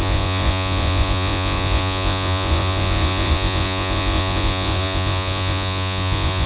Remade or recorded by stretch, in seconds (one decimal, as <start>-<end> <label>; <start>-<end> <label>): 0.0-6.5 remade